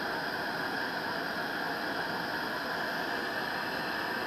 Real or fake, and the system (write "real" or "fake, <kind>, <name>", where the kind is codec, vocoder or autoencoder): real